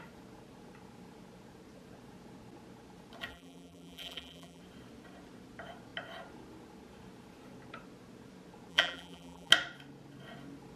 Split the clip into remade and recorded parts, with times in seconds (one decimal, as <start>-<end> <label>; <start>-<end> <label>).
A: 0.0-3.3 recorded; 3.3-4.6 remade; 4.6-8.7 recorded; 8.7-9.5 remade; 9.5-10.8 recorded

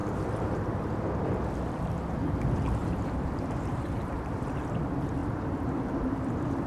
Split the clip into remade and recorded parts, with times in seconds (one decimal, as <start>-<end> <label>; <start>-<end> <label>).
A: 0.0-1.1 remade; 1.1-2.8 recorded; 2.8-4.6 remade; 4.6-5.2 recorded; 5.2-6.7 remade

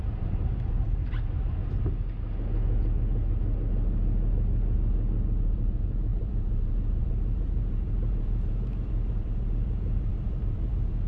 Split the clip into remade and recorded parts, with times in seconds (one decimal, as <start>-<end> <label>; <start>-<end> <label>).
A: 0.0-1.6 remade; 1.6-5.4 recorded; 5.4-11.1 remade

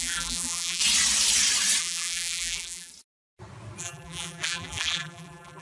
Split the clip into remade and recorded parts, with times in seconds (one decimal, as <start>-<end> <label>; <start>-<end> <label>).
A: 0.0-0.8 remade; 0.8-1.8 recorded; 1.8-2.9 remade; 2.9-3.8 recorded; 3.8-5.6 remade

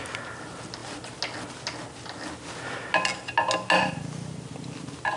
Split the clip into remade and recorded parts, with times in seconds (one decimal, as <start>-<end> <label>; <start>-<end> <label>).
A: 0.0-5.2 recorded

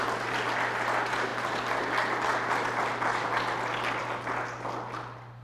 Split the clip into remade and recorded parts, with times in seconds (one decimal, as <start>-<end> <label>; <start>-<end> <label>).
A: 0.0-5.4 recorded